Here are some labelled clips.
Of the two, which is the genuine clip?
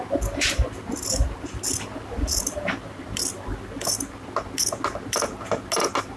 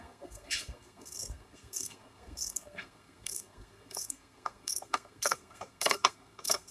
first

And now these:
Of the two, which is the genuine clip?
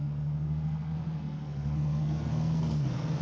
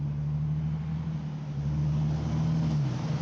second